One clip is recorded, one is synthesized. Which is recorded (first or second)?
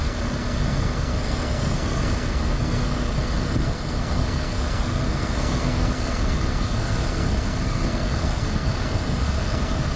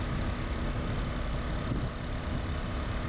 second